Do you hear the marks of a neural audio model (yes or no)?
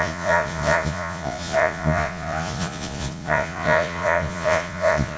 yes